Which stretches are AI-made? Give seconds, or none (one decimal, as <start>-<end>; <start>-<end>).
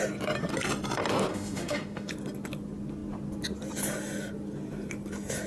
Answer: 1.3-2.1